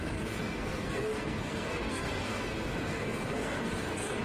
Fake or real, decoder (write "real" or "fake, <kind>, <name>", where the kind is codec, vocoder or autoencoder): fake, codec, SNAC